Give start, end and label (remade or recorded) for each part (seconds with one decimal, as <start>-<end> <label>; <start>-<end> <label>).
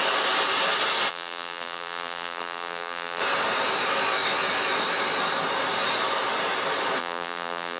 0.0-1.1 recorded; 1.1-3.2 remade; 3.2-7.0 recorded; 7.0-7.8 remade